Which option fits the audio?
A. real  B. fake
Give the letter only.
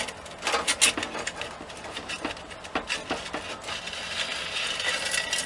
A